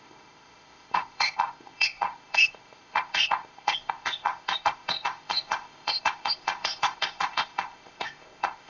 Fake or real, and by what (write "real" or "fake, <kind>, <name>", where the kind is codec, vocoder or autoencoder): fake, codec, ZipCodec